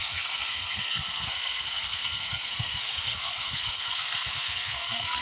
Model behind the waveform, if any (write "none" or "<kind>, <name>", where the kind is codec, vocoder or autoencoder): codec, SNAC